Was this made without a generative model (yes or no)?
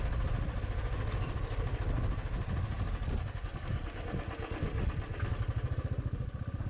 yes